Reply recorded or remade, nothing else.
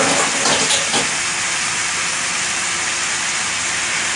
recorded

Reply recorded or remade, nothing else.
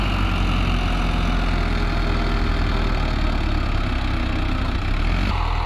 recorded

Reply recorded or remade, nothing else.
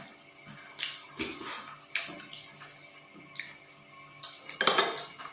recorded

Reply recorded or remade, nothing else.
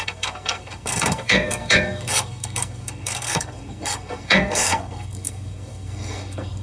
remade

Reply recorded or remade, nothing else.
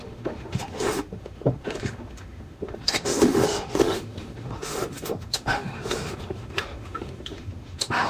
remade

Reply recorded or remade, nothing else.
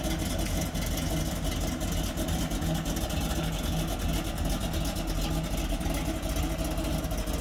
recorded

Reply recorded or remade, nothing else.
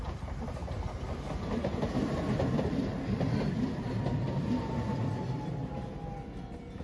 recorded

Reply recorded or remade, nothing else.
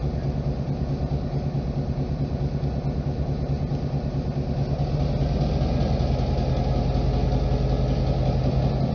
recorded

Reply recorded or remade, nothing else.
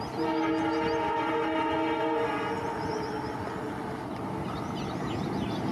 recorded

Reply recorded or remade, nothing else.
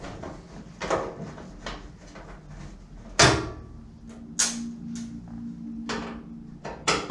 recorded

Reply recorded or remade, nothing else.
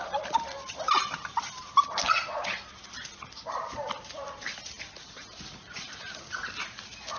recorded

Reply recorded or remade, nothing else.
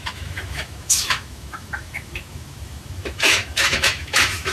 remade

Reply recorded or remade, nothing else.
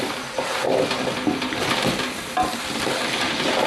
recorded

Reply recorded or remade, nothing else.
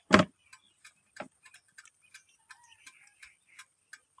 recorded